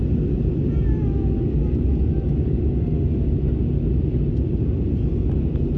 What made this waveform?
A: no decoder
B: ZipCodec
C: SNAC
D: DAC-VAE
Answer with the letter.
A